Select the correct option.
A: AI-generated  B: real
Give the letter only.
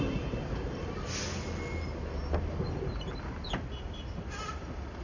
B